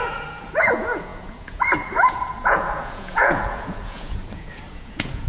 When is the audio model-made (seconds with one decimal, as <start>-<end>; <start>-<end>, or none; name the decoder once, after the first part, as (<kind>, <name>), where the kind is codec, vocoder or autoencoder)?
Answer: 0.0-5.3 (vocoder, Vocos)